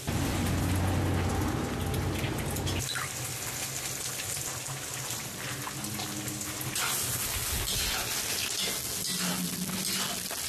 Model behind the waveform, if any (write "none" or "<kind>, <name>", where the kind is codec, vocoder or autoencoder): none